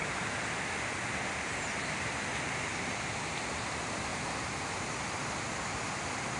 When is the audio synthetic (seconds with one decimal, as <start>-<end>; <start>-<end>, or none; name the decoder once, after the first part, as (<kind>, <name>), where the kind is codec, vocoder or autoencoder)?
none